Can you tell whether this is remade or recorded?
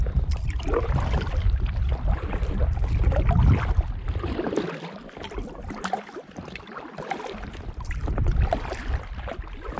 remade